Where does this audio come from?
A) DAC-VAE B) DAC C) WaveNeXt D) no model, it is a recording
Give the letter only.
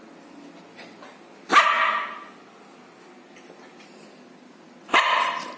D